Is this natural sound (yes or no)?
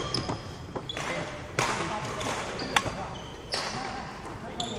yes